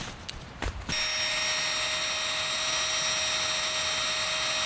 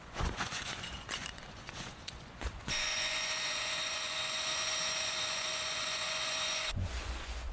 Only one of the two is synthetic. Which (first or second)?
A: second